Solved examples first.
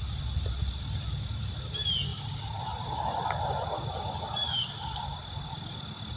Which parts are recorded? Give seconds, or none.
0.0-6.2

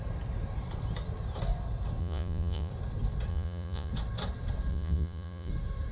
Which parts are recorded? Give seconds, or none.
0.0-2.0; 2.7-3.3; 3.9-4.7; 5.5-5.9